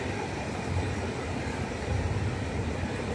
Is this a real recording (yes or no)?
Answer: yes